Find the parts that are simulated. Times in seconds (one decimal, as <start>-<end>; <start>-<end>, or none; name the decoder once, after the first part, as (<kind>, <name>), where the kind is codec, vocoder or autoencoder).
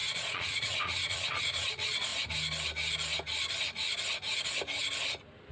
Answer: 0.0-2.1 (vocoder, Vocos)